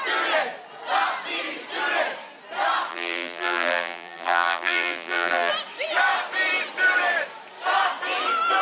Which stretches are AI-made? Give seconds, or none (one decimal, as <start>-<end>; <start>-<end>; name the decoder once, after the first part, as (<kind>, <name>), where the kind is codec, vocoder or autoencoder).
2.9-5.5 (vocoder, BigVGAN v2)